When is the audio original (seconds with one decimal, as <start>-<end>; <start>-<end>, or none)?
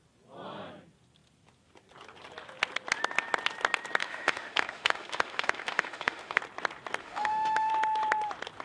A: 0.0-4.0; 6.4-7.0; 7.7-8.6